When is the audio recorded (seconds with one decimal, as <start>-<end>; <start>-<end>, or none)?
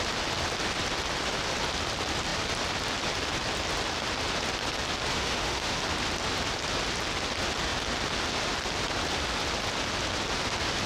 0.0-5.1; 5.8-10.9